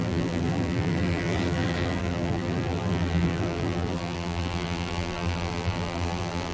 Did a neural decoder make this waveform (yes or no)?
yes